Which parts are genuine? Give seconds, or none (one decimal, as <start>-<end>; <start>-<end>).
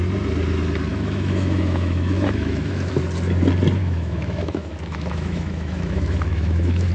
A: 0.0-0.9; 2.9-3.8